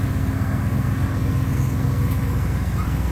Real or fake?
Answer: fake